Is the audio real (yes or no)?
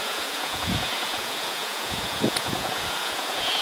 no